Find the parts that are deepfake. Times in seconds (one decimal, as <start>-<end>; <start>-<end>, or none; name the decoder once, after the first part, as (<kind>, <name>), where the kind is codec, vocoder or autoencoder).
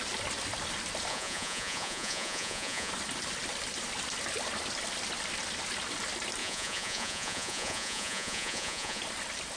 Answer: 1.1-2.9 (vocoder, Vocos); 6.4-9.0